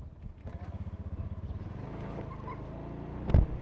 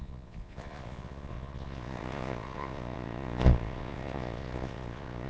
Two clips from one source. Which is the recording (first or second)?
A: first